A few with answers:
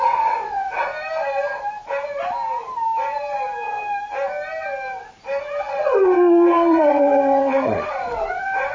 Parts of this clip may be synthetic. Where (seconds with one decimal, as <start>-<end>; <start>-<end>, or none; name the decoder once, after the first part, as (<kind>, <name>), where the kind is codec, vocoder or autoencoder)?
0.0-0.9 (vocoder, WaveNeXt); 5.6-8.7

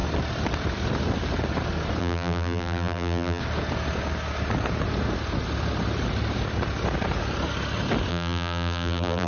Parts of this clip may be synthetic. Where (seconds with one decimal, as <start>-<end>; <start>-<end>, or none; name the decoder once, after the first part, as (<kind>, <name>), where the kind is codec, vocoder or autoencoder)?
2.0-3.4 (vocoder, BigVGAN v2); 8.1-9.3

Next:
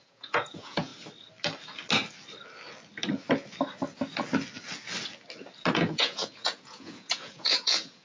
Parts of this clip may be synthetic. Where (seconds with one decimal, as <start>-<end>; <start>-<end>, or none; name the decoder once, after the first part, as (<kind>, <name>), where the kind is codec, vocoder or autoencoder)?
0.0-0.9 (vocoder, Vocos); 5.7-8.0

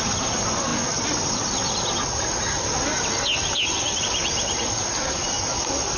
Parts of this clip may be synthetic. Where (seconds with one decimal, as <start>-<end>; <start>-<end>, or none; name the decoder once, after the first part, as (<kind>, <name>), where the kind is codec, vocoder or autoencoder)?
none

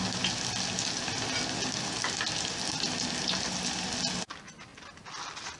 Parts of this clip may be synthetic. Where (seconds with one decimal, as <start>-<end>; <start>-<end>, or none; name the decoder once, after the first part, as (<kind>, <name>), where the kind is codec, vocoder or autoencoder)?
none